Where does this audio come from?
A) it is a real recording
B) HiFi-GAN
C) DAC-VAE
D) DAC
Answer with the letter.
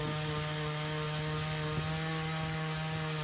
A